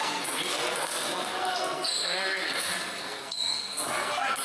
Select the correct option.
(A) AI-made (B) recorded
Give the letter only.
A